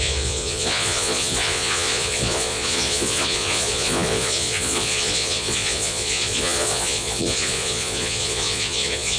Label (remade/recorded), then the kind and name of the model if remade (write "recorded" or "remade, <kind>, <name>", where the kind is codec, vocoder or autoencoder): remade, vocoder, Vocos